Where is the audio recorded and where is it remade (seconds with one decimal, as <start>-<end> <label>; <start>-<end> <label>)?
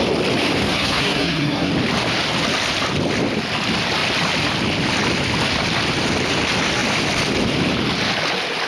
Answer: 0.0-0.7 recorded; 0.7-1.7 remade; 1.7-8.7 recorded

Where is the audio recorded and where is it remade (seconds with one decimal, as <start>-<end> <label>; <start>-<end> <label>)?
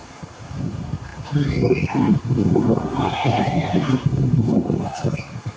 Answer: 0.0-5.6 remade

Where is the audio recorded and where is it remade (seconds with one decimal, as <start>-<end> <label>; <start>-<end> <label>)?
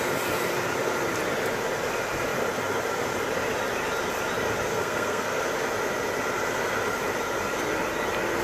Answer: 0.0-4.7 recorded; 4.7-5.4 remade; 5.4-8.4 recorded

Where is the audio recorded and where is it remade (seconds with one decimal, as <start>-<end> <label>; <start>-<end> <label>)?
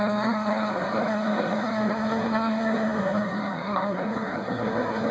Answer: 0.0-5.1 remade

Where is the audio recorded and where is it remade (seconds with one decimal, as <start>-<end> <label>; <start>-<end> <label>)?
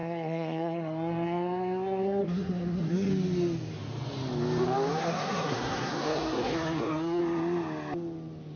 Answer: 0.0-3.1 remade; 3.1-5.0 recorded; 5.0-7.2 remade; 7.2-8.6 recorded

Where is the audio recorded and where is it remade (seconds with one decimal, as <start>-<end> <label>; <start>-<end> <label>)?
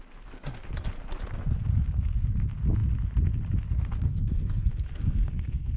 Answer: 0.0-4.1 recorded; 4.1-5.8 remade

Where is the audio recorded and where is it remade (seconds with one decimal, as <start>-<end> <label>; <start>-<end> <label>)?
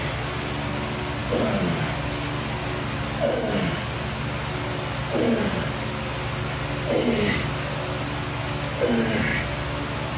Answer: 0.0-10.2 recorded